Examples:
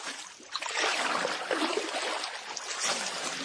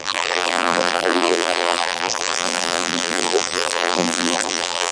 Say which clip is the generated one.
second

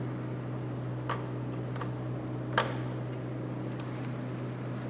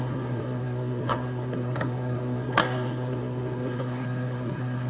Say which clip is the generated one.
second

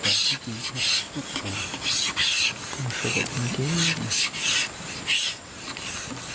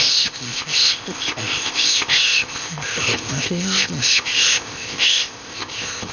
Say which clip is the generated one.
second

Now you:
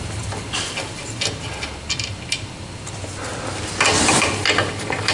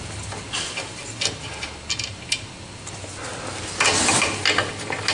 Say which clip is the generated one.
first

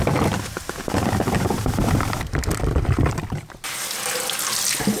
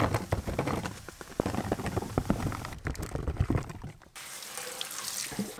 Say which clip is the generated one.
second